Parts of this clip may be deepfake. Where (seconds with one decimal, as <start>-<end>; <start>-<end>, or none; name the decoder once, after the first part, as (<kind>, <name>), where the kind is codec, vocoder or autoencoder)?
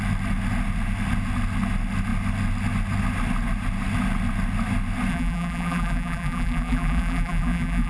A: 5.1-7.9 (vocoder, BigVGAN v2)